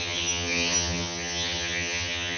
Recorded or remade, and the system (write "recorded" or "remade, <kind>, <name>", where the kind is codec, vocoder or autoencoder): remade, vocoder, HiFi-GAN